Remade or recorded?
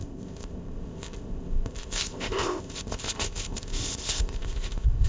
remade